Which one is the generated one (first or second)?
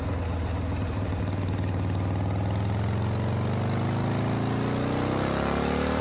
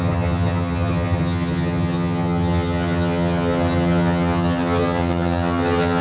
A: second